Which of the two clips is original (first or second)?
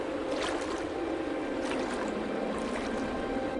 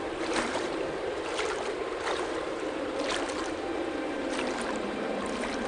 first